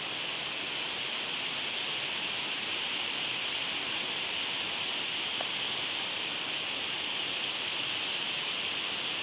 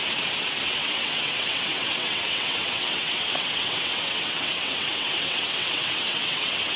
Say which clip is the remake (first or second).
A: second